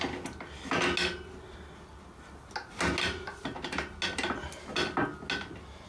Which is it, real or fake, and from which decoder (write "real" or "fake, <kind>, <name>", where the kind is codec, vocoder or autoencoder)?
real